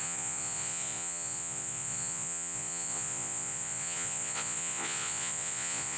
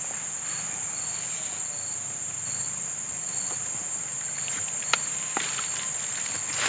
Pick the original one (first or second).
second